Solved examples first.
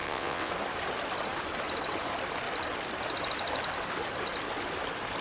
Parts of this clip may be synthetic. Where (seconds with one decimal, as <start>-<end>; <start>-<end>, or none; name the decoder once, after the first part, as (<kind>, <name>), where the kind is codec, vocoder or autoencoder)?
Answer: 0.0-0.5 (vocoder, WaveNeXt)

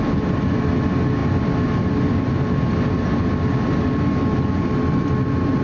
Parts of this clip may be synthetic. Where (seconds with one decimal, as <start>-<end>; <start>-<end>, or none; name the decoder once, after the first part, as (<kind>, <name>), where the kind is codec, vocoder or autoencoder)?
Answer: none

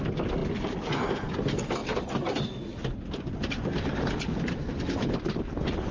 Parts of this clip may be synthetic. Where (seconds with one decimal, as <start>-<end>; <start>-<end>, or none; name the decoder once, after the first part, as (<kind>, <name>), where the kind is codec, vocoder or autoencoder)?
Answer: none

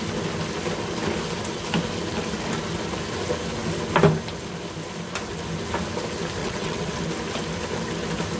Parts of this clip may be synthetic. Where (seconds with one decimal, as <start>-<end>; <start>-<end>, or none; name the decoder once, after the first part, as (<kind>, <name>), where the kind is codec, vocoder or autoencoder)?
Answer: 6.4-7.0 (vocoder, WaveNeXt)

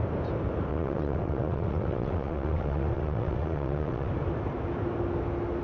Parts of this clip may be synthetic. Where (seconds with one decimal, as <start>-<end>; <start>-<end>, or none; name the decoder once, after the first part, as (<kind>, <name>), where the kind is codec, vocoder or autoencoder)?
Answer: 0.7-4.1 (vocoder, WaveNeXt)

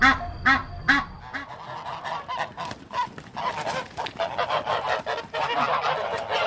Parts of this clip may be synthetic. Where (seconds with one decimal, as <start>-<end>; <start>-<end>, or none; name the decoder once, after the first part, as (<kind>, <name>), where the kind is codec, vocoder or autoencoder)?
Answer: none

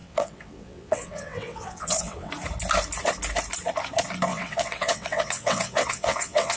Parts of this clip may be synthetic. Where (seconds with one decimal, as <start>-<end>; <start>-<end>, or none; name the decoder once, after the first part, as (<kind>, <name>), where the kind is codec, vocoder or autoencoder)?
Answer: 0.0-2.3 (vocoder, WaveNeXt); 4.3-6.6

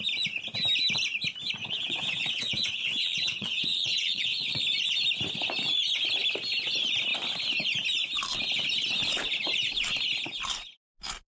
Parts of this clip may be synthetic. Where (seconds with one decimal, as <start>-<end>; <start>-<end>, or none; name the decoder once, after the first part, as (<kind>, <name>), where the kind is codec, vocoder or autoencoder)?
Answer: 1.6-4.6 (vocoder, WaveNeXt)